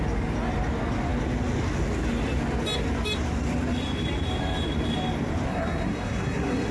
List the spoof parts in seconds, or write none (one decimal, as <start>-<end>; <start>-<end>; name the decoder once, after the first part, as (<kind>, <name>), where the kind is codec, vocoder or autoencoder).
5.5-6.7 (codec, SNAC)